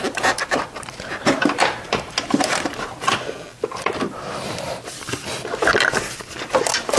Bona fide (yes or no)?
no